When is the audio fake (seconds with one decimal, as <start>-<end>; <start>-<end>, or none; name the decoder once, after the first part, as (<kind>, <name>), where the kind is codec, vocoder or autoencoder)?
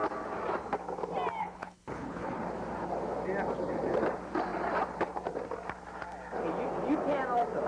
1.4-2.4 (codec, HILCodec)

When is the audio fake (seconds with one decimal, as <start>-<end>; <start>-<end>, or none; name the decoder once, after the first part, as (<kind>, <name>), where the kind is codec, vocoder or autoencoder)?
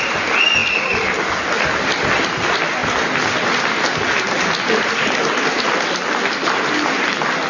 none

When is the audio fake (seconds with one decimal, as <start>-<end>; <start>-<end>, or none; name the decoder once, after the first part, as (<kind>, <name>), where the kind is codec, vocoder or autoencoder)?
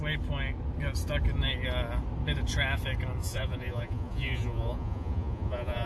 3.2-5.9 (vocoder, Vocos)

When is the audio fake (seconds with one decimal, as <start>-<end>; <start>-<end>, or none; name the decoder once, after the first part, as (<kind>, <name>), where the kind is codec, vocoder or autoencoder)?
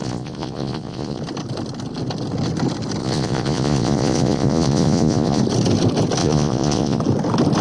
0.0-1.2 (vocoder, Vocos); 3.0-5.4; 6.2-7.0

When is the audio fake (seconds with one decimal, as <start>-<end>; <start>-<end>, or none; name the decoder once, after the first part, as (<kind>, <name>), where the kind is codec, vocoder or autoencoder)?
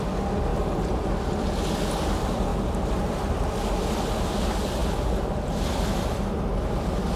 2.5-3.5 (vocoder, BigVGAN v2)